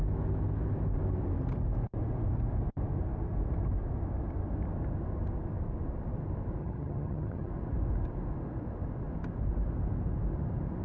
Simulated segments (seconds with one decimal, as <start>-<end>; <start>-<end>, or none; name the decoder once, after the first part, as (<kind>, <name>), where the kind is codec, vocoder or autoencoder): 6.6-7.5 (vocoder, HiFi-GAN)